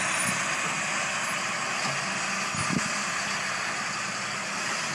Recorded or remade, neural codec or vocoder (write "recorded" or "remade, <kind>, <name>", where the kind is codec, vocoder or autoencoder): recorded